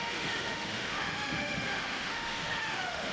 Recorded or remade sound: remade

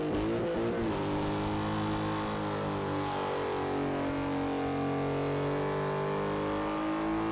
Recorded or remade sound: recorded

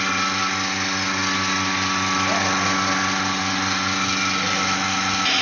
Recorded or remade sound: recorded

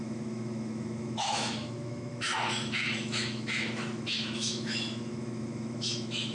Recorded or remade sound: remade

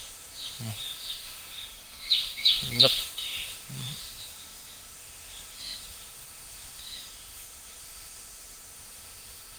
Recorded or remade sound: remade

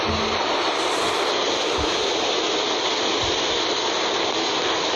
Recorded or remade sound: recorded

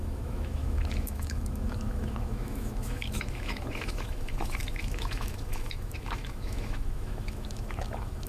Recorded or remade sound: remade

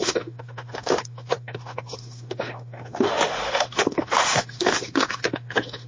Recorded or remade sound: remade